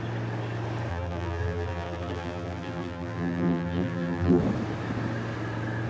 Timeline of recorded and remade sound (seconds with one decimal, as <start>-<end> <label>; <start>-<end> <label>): 0.0-0.9 recorded; 0.9-4.4 remade; 4.4-5.9 recorded